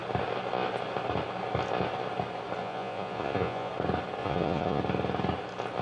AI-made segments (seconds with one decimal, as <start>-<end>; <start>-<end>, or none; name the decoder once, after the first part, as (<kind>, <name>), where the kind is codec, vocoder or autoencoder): 2.6-3.7 (vocoder, Vocos); 4.2-4.8